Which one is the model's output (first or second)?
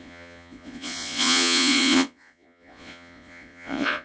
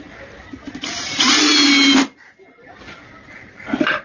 first